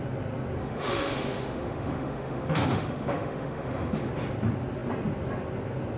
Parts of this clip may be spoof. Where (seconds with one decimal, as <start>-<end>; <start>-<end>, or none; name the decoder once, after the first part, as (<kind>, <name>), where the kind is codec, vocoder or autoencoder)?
0.6-4.1 (autoencoder, DAC-VAE)